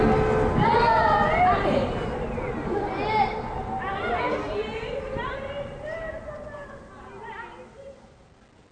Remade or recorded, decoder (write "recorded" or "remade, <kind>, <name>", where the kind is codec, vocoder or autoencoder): recorded